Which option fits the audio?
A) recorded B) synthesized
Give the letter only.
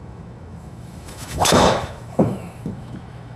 B